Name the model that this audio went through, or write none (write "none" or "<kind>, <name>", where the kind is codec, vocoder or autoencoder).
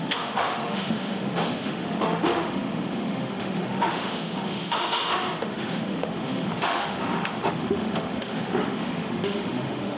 autoencoder, DAC-VAE